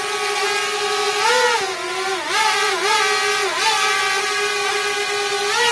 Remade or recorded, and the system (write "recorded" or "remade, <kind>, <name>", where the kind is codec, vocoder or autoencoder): recorded